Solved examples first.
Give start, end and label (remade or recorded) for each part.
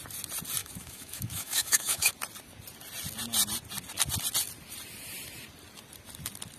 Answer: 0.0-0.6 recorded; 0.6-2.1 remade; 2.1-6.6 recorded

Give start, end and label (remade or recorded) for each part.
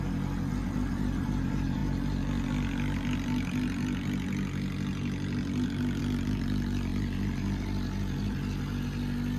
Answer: 0.0-9.4 recorded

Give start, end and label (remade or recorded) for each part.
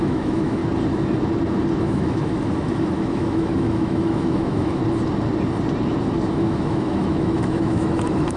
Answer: 0.0-0.6 remade; 0.6-1.8 recorded; 1.8-4.8 remade; 4.8-6.3 recorded; 6.3-8.4 remade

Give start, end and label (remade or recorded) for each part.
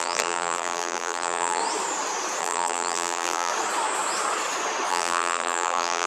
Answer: 0.0-1.6 remade; 1.6-2.4 recorded; 2.4-3.5 remade; 3.5-4.9 recorded; 4.9-6.1 remade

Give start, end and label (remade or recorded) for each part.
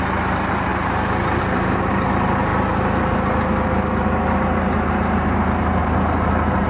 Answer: 0.0-0.7 remade; 0.7-1.4 recorded; 1.4-2.5 remade; 2.5-3.9 recorded; 3.9-6.7 remade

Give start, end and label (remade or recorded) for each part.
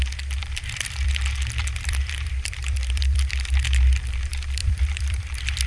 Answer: 0.0-0.4 recorded; 0.4-1.1 remade; 1.1-1.6 recorded; 1.6-4.0 remade; 4.0-4.6 recorded; 4.6-5.2 remade; 5.2-5.7 recorded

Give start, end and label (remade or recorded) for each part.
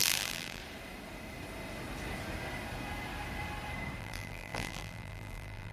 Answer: 0.0-0.6 remade; 0.6-4.0 recorded; 4.0-5.7 remade